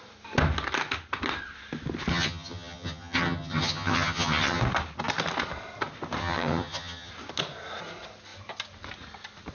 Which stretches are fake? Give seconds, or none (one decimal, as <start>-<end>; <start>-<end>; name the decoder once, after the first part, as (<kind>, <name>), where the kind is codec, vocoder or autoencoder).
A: 2.1-4.6 (vocoder, HiFi-GAN); 6.2-7.1